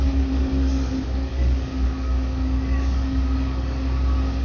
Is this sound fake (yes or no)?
yes